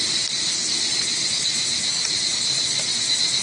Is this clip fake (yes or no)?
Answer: no